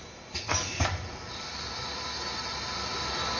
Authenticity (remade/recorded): remade